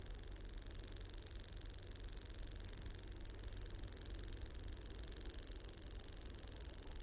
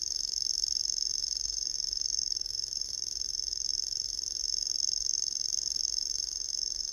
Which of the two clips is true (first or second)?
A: first